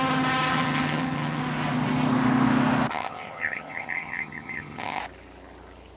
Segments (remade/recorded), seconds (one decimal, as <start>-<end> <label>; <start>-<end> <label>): 0.0-0.5 recorded; 0.5-1.4 remade; 1.4-2.9 recorded; 2.9-5.0 remade; 5.0-6.0 recorded